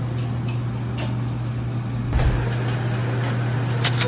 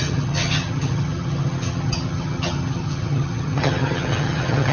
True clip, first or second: first